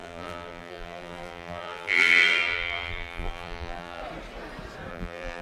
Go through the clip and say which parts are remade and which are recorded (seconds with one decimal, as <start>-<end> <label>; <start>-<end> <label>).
0.0-4.0 remade; 4.0-4.9 recorded; 4.9-5.4 remade